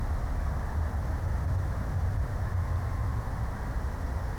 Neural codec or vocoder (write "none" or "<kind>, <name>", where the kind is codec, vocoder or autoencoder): none